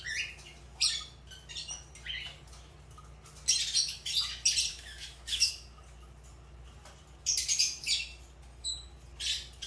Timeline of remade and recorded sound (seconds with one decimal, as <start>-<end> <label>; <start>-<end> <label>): 0.0-4.7 recorded; 4.7-5.5 remade; 5.5-9.7 recorded